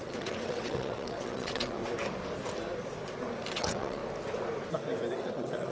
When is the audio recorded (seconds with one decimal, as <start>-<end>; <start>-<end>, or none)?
1.8-3.5; 4.0-5.2